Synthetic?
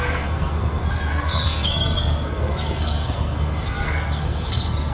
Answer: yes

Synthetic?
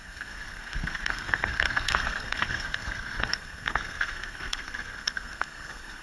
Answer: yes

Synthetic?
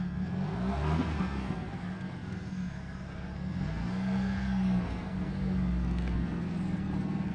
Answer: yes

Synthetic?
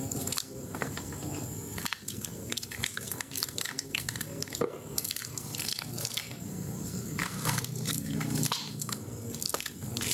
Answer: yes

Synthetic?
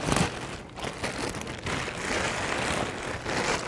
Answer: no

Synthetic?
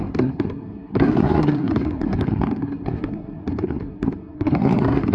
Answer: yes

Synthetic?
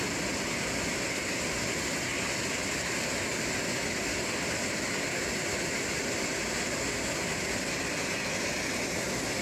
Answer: no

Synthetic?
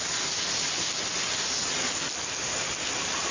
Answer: no